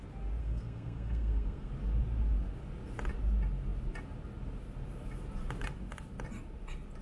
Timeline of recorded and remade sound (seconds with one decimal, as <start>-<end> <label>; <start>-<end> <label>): 0.0-0.4 recorded; 0.4-1.7 remade; 1.7-7.0 recorded